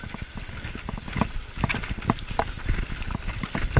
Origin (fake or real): real